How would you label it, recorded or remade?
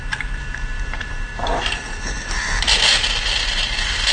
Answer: remade